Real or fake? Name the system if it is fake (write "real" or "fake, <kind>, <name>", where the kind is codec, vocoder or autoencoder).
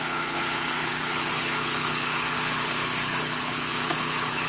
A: fake, codec, HILCodec